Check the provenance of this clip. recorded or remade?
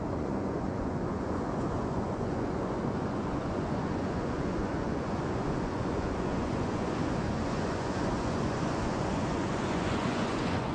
remade